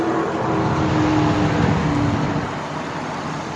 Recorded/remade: recorded